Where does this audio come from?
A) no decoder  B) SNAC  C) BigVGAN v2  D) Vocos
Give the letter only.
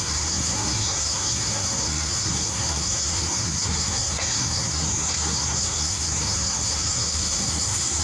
B